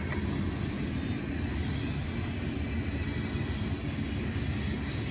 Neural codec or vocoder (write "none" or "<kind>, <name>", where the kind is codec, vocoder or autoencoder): none